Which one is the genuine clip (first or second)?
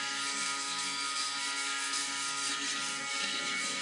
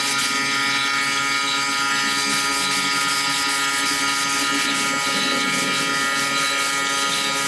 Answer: second